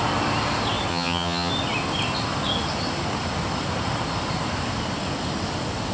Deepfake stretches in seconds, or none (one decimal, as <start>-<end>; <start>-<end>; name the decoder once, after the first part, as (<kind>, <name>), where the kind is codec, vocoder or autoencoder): 0.9-1.5 (vocoder, HiFi-GAN)